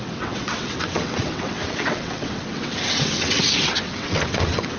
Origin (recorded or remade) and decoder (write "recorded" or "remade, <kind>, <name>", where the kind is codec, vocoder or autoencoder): remade, vocoder, WaveNeXt